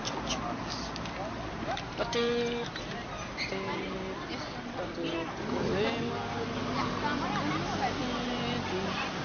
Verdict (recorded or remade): recorded